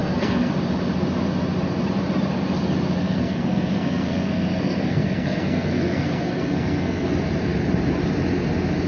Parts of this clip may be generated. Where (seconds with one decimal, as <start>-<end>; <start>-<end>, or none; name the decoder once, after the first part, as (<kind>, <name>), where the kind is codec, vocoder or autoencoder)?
0.0-0.5 (codec, SNAC); 3.0-7.1